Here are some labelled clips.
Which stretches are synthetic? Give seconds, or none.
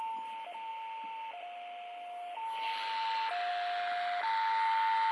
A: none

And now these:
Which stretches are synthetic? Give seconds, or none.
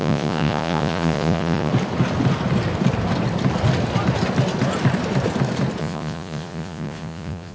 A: 0.0-1.7 (vocoder, Vocos); 5.8-7.5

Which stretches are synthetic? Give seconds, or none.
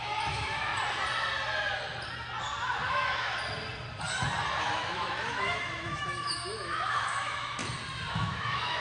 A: 0.0-0.7 (autoencoder, DAC-VAE); 2.9-3.3; 4.6-7.6; 8.1-8.8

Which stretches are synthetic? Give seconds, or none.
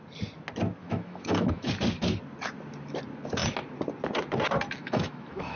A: 0.8-1.7 (autoencoder, DAC-VAE); 4.8-5.6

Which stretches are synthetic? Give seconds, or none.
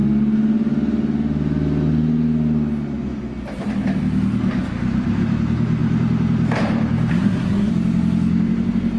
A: 7.1-7.7 (codec, SNAC)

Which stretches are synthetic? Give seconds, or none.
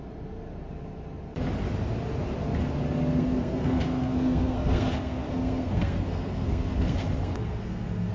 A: 3.2-8.1 (codec, SNAC)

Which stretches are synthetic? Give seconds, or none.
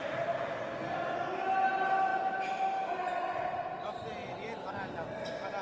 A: none